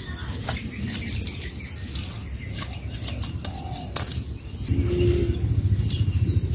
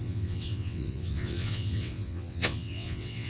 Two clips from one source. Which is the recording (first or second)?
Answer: first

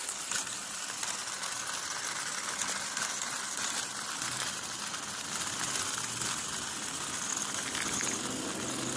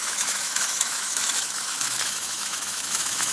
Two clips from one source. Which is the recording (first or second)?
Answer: first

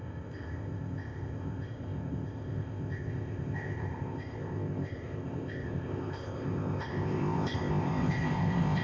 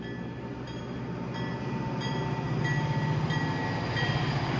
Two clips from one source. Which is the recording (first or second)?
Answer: second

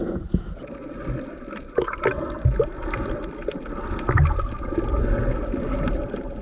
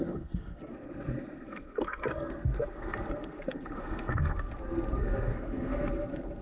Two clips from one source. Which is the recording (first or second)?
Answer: first